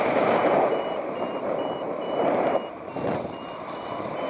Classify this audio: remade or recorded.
remade